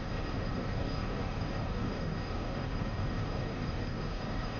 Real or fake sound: fake